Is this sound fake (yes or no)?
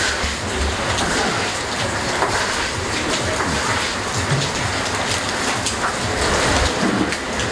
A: no